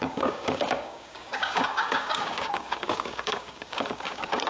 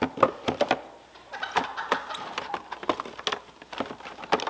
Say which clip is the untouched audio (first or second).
second